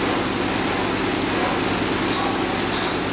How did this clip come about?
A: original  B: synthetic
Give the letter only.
A